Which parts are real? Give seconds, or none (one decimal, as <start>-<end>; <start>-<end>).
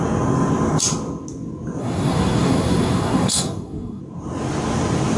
0.0-1.8; 4.0-5.2